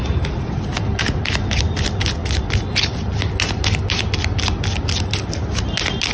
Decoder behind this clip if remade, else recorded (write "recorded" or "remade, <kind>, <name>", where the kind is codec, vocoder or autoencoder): recorded